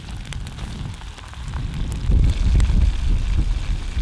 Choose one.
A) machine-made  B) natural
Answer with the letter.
B